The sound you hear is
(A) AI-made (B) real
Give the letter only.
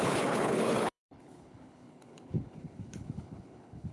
A